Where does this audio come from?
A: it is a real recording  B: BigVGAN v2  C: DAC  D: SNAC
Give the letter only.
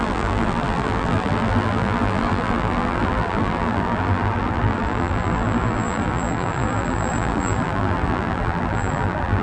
B